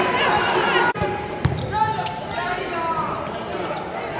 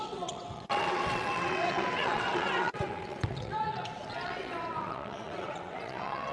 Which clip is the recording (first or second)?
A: first